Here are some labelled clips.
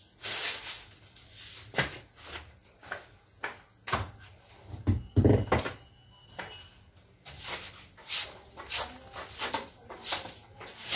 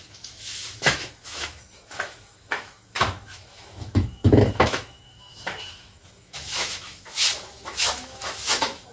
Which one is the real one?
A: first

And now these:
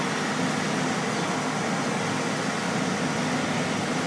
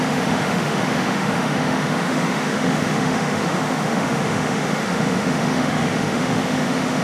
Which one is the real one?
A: first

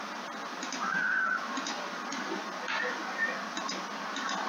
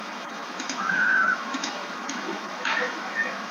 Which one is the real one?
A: first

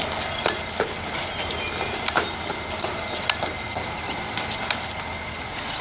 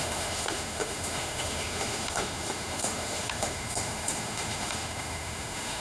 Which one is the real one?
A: first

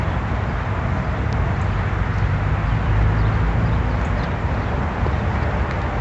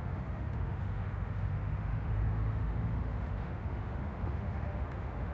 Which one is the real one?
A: first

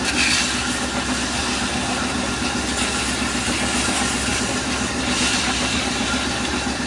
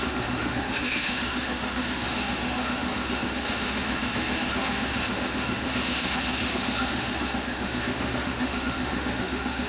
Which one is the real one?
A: first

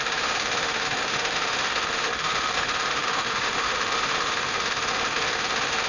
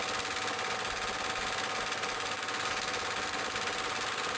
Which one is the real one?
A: second